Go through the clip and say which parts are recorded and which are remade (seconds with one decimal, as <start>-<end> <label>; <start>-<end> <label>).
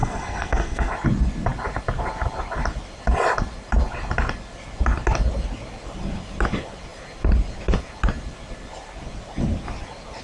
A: 0.0-0.9 remade; 0.9-10.2 recorded